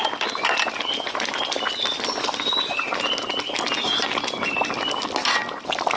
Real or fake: real